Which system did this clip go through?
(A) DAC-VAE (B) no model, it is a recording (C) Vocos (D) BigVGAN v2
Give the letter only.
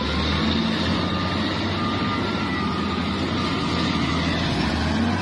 B